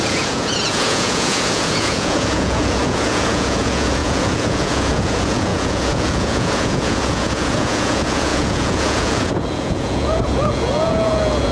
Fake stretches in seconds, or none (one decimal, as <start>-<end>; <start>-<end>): 0.0-11.5